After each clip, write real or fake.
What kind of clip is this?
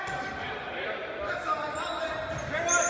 real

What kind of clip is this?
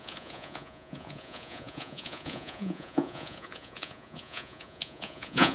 fake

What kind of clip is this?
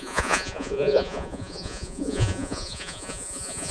fake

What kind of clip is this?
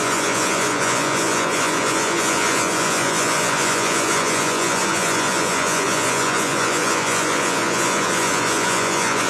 fake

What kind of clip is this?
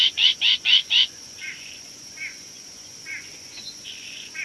fake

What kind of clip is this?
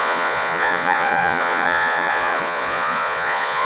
fake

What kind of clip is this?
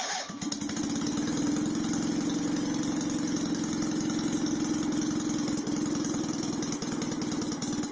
real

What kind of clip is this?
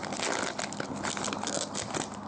real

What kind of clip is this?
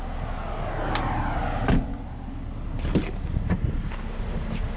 real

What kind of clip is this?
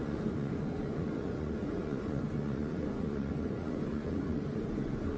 fake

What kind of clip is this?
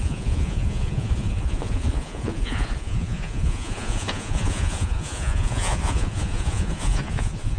fake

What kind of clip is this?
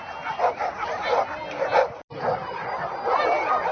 real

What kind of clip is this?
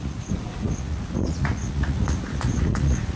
fake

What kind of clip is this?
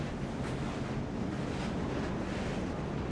real